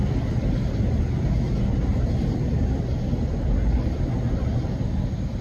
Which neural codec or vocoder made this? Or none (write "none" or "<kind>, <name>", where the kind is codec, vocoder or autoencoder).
none